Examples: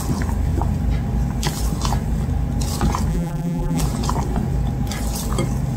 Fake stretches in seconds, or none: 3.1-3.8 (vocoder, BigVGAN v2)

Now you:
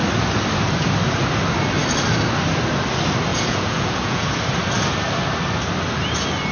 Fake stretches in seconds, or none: 3.3-4.4 (vocoder, Vocos)